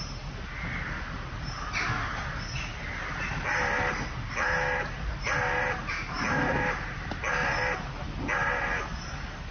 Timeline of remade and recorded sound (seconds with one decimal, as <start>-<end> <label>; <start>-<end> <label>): 0.0-9.5 recorded